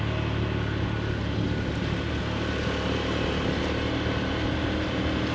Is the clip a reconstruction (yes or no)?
no